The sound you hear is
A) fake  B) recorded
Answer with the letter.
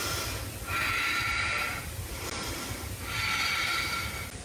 B